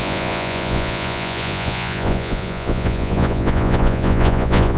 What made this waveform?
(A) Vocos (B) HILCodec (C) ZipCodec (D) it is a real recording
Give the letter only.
A